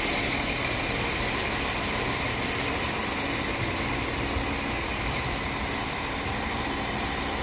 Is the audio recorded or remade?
recorded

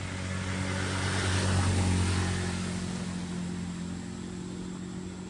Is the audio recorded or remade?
recorded